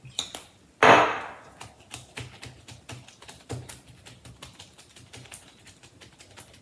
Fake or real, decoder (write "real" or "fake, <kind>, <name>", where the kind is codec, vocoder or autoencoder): real